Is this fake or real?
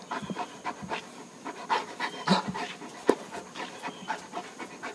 real